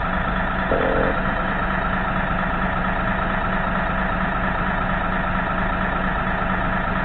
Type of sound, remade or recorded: recorded